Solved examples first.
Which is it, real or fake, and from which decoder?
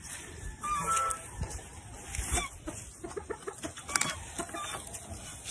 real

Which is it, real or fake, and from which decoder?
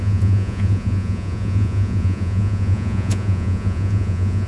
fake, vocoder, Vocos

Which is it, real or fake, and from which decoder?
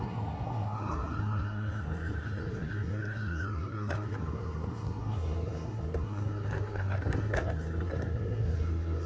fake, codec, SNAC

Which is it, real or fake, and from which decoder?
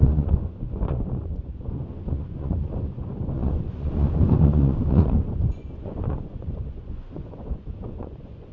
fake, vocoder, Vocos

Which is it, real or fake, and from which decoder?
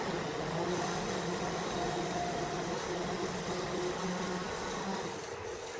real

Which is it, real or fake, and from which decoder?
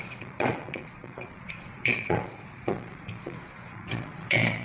fake, vocoder, Vocos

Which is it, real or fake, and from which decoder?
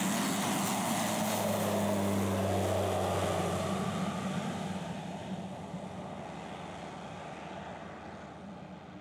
real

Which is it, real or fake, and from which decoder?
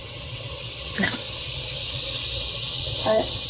fake, vocoder, WaveNeXt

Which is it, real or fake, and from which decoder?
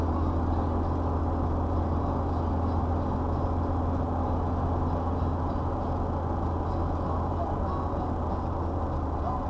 real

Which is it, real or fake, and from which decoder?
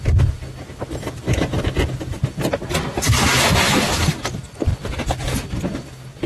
real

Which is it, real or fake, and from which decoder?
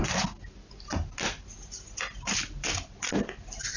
real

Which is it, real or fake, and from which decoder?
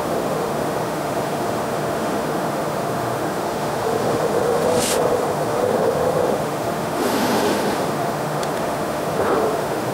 fake, autoencoder, DAC-VAE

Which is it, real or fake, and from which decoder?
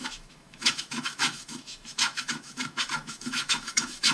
fake, autoencoder, DAC-VAE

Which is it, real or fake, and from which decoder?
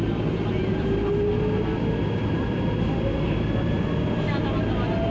real